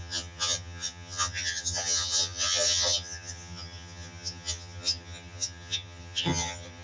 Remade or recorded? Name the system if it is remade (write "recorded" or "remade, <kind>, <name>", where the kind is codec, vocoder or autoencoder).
remade, vocoder, HiFi-GAN